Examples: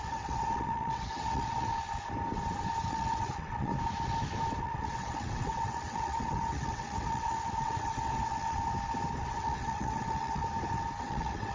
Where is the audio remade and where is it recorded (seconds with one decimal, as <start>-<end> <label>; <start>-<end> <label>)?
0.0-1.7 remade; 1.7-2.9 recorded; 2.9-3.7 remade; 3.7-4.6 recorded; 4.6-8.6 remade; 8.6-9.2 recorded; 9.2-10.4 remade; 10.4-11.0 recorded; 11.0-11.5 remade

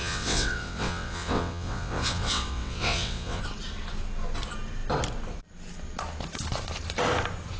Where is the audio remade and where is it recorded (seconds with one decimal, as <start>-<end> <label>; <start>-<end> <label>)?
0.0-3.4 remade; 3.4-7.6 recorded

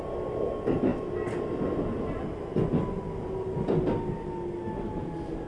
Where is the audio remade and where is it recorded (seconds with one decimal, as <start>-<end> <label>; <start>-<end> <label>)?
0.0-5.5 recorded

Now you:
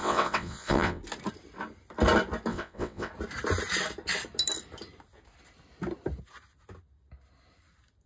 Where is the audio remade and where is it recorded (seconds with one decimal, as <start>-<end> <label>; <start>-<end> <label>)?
0.0-1.0 remade; 1.0-2.5 recorded; 2.5-3.1 remade; 3.1-8.1 recorded

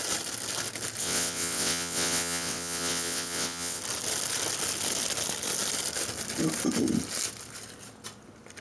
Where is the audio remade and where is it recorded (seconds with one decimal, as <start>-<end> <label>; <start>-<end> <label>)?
0.0-1.0 recorded; 1.0-3.8 remade; 3.8-8.6 recorded

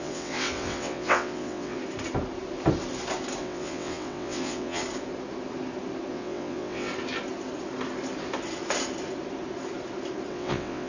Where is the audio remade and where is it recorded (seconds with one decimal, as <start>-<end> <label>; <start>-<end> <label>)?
0.0-1.8 remade; 1.8-3.4 recorded; 3.4-4.8 remade; 4.8-6.1 recorded; 6.1-6.9 remade; 6.9-10.3 recorded; 10.3-10.9 remade

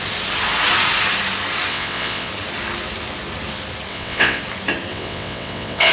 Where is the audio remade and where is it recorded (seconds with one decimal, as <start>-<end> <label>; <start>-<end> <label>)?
0.0-1.7 recorded; 1.7-2.3 remade; 2.3-3.9 recorded; 3.9-4.4 remade; 4.4-4.9 recorded; 4.9-5.9 remade